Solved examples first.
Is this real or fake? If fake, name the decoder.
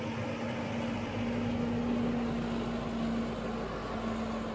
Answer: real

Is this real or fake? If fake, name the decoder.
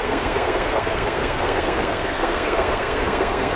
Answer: fake, codec, SNAC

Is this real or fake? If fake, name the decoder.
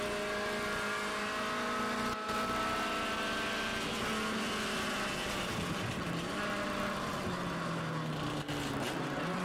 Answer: real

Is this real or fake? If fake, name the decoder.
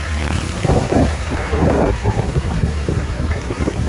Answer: fake, codec, SNAC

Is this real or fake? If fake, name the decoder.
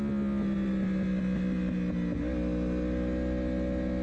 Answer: real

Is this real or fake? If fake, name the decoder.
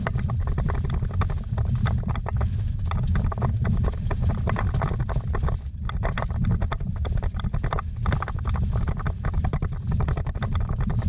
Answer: real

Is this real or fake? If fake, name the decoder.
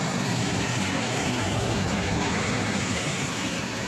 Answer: fake, codec, SNAC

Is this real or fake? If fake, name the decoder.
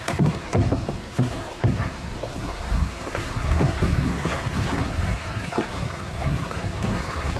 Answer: fake, codec, SNAC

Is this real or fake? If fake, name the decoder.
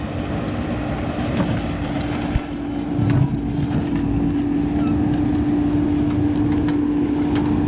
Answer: real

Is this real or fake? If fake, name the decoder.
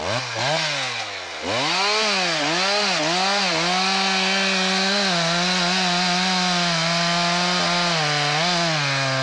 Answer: real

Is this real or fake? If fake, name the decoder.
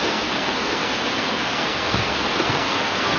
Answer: fake, codec, SNAC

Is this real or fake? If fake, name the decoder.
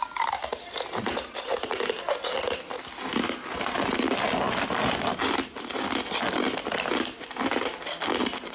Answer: real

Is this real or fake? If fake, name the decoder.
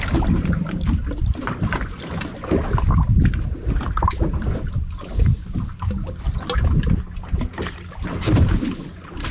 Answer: real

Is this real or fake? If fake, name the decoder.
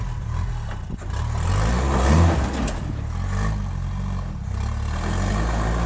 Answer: real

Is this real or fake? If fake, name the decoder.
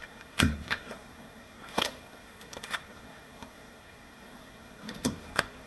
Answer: fake, codec, SNAC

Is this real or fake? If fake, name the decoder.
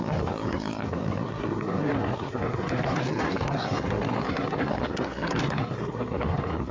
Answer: fake, codec, SNAC